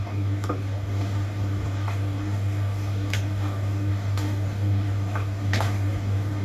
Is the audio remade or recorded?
remade